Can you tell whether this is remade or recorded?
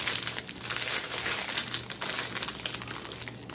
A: recorded